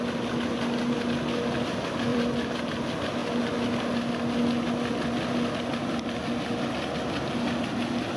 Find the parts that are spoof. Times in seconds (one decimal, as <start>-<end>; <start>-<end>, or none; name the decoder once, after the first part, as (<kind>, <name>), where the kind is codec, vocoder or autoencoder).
2.1-2.7 (vocoder, BigVGAN v2)

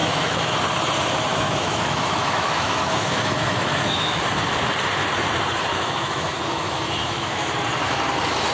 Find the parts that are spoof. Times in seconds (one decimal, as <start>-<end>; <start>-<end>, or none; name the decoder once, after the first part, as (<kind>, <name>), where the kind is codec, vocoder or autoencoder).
0.0-0.6 (autoencoder, DAC-VAE); 1.3-4.2; 5.7-7.5

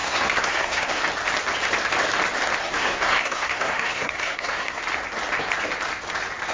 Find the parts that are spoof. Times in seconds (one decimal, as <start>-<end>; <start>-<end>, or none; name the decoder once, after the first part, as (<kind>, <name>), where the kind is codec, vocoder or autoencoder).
0.0-1.0 (codec, SNAC); 2.6-4.8

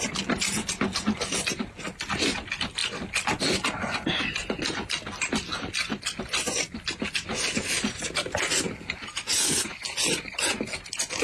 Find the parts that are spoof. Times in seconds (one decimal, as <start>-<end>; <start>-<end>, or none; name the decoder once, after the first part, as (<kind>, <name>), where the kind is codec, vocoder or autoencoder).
none

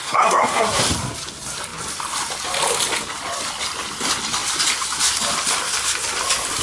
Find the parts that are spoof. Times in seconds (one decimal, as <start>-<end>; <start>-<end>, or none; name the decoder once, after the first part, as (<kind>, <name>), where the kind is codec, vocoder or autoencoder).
0.0-0.8 (codec, SNAC)

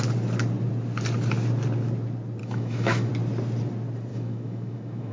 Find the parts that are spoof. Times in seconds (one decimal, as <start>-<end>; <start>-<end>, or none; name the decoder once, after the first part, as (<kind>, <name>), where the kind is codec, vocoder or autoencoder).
2.4-3.1 (autoencoder, DAC-VAE); 4.1-5.1

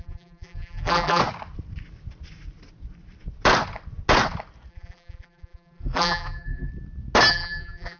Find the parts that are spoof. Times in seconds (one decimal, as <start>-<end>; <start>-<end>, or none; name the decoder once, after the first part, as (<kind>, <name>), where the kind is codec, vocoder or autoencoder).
0.0-1.2 (vocoder, BigVGAN v2); 4.7-6.7; 7.3-8.0